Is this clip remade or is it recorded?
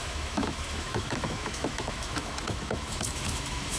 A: remade